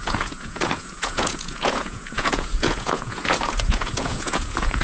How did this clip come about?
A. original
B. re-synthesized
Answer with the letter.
B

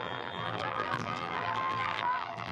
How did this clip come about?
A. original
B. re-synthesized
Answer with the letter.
B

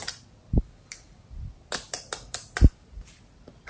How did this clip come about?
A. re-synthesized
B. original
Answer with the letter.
B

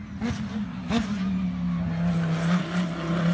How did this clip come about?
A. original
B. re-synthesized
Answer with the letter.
A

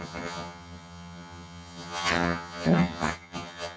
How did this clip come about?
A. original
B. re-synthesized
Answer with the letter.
B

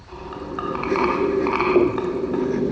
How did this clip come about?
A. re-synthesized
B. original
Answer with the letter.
A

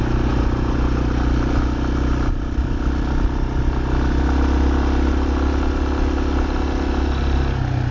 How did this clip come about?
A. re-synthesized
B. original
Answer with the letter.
B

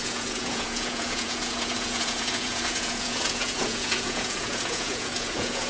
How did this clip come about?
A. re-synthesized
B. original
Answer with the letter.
A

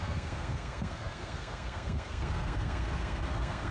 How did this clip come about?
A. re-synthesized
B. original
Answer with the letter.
A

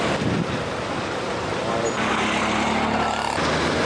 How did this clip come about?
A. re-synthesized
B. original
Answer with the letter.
B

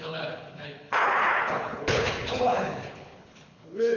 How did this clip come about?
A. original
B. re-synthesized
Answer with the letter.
B